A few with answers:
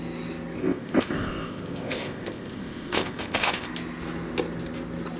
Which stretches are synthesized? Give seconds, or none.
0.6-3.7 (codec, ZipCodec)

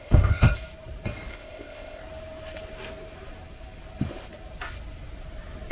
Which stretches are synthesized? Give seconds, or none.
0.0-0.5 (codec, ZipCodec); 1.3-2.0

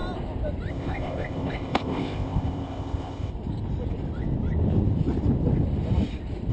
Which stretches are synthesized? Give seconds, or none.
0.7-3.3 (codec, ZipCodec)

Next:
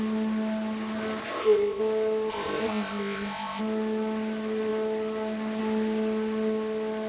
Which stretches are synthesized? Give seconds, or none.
1.2-1.8 (codec, ZipCodec); 2.3-3.6